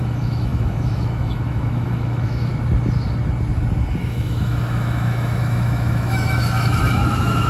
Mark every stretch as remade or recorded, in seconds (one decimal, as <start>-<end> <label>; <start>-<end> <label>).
0.0-2.5 remade; 2.5-4.0 recorded; 4.0-7.5 remade